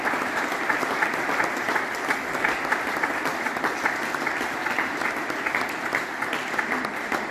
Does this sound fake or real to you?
real